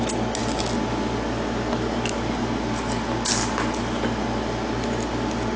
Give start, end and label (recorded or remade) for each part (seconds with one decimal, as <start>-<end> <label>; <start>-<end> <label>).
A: 0.0-5.6 recorded